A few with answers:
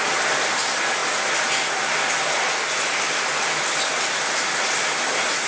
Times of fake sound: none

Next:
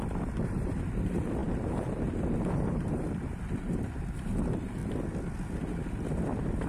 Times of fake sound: 0.0-4.8 (vocoder, BigVGAN v2); 6.1-6.7

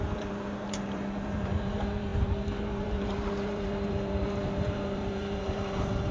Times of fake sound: 0.0-6.1 (vocoder, BigVGAN v2)

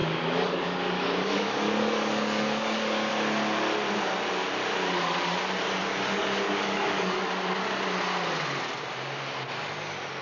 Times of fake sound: 0.0-3.1 (codec, DAC); 5.8-7.2

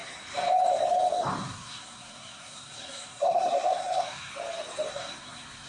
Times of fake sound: 1.4-4.3 (codec, SNAC); 4.9-5.7

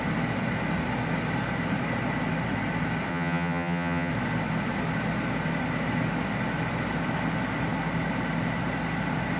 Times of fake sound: 3.1-4.1 (vocoder, HiFi-GAN)

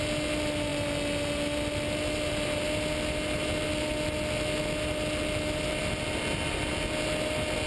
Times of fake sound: none

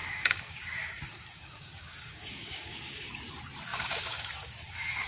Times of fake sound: 0.0-3.1 (codec, DAC); 3.7-5.1